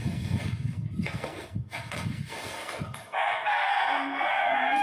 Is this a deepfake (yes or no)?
yes